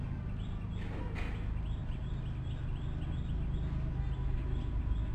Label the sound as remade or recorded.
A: recorded